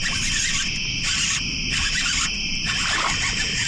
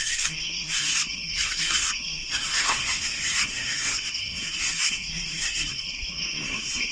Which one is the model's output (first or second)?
second